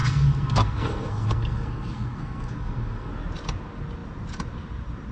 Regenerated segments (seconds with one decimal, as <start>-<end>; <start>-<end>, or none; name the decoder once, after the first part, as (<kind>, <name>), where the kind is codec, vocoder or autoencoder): 0.0-3.1 (codec, SNAC)